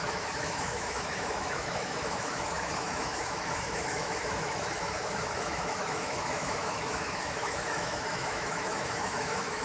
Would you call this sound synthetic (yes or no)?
yes